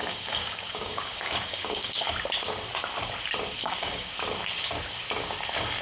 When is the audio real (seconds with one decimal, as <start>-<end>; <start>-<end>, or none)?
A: 2.1-3.6; 4.1-5.8